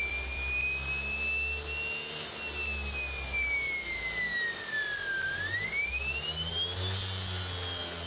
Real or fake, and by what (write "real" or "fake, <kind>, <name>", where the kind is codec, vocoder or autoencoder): real